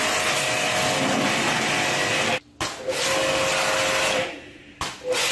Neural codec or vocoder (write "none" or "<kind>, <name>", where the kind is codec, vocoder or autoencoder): none